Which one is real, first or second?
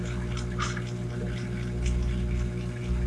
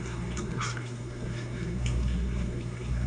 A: first